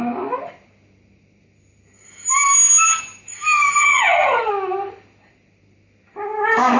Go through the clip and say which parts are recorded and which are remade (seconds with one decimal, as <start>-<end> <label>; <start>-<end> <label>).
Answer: 0.0-3.8 recorded; 3.8-4.5 remade; 4.5-6.8 recorded